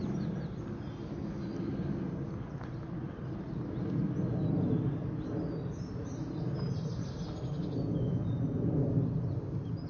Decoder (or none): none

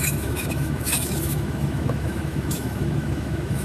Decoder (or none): autoencoder, DAC-VAE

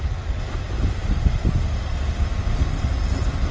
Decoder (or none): none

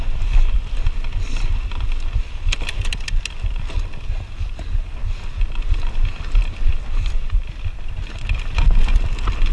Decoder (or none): none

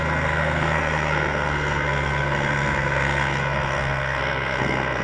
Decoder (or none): codec, SNAC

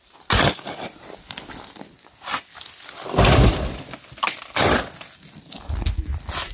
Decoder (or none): none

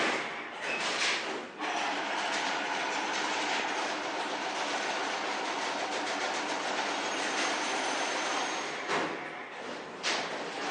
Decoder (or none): vocoder, BigVGAN v2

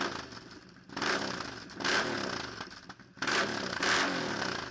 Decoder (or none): none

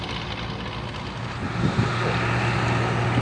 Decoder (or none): none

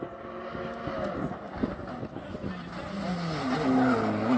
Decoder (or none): none